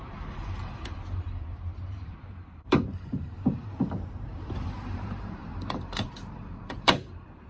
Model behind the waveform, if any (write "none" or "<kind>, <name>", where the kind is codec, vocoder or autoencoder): vocoder, BigVGAN v2